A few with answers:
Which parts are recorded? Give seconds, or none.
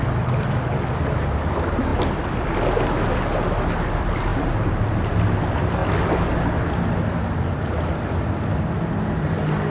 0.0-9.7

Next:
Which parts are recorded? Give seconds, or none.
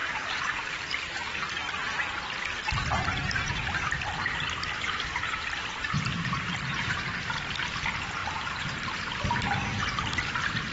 none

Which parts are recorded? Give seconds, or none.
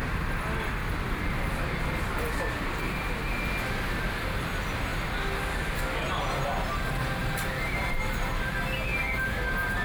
0.0-7.0; 8.5-8.9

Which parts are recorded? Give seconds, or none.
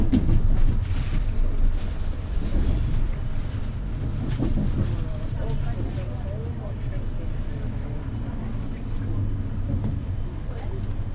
0.0-2.5; 3.6-11.1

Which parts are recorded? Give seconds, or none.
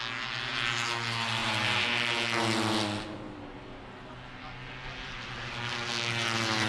0.0-6.7